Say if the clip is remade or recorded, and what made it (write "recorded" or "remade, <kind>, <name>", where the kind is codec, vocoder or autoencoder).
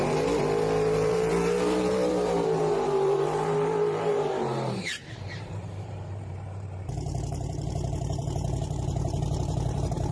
remade, vocoder, BigVGAN v2